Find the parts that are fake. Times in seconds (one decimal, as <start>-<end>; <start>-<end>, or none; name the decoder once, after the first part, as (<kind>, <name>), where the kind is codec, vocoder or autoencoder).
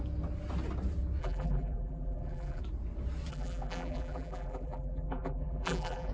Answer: 1.2-2.6 (vocoder, BigVGAN v2); 3.3-6.1